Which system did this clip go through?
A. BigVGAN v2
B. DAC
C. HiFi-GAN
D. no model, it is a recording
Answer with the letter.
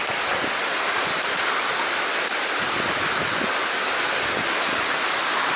D